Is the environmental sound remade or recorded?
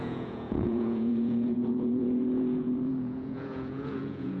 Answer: remade